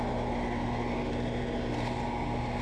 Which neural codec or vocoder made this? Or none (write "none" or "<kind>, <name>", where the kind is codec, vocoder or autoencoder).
none